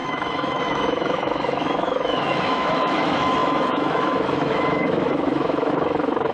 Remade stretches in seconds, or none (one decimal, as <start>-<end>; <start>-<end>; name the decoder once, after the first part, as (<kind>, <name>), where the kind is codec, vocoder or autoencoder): 0.0-6.3 (autoencoder, DAC-VAE)